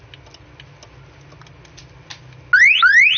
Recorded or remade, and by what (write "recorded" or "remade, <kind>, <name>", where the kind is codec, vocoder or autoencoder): recorded